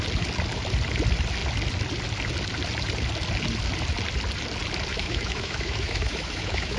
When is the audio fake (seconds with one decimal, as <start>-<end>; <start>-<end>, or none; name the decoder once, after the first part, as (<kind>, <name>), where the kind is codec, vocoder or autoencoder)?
4.9-6.8 (autoencoder, DAC-VAE)